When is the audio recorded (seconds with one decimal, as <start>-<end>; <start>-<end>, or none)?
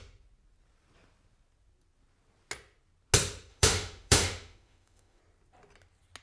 0.0-3.5; 5.2-6.2